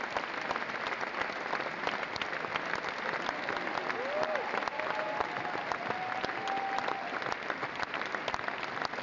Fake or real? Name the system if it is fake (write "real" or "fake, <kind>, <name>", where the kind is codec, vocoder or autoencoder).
real